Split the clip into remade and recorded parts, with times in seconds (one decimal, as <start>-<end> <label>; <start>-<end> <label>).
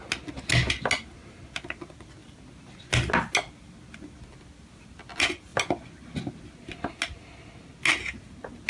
0.0-8.7 recorded